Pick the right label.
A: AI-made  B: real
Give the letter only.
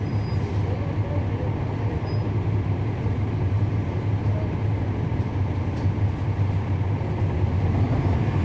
B